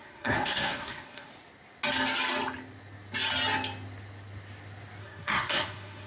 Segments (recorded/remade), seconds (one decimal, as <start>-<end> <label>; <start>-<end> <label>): 0.0-1.3 remade; 1.3-5.0 recorded; 5.0-6.1 remade